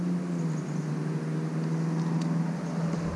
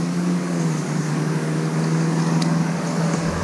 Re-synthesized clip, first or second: second